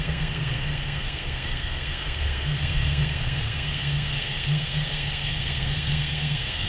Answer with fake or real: fake